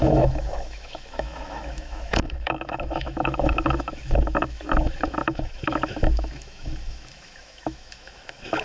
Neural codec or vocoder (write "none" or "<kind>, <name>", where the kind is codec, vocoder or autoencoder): autoencoder, DAC-VAE